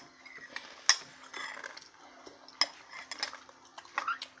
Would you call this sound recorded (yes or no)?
yes